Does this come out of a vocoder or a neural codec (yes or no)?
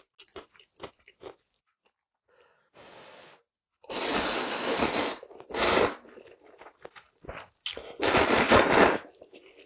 no